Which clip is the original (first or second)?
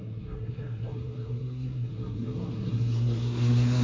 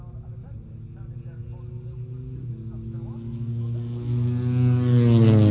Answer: second